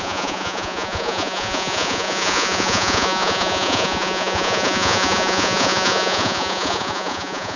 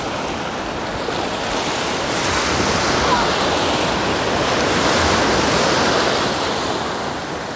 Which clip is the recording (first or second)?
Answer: second